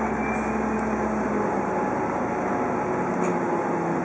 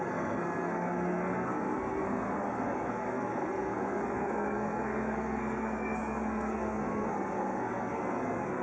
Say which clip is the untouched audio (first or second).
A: first